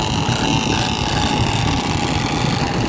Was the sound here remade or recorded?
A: recorded